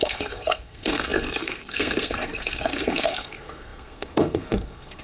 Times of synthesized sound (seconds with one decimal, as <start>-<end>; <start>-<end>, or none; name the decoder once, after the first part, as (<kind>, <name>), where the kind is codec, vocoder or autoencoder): 0.0-5.0 (codec, SNAC)